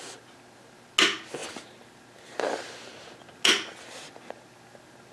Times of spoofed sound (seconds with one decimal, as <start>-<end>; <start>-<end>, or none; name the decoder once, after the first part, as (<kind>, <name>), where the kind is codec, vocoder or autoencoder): none